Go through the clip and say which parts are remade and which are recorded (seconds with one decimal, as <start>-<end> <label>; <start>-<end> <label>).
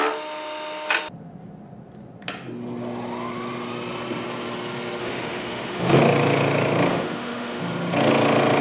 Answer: 0.0-5.0 recorded; 5.0-6.0 remade; 6.0-6.9 recorded; 6.9-7.6 remade; 7.6-8.6 recorded